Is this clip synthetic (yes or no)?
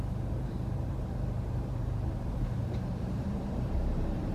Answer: yes